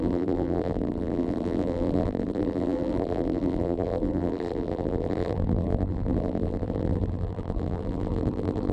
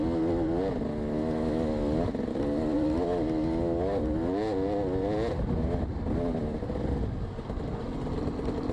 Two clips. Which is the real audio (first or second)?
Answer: second